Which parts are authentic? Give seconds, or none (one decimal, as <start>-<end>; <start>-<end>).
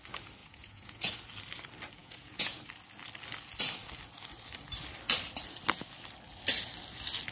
0.0-0.4; 1.1-2.0; 2.6-7.3